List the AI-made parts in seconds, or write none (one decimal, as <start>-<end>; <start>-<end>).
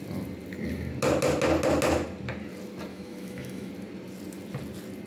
2.9-3.7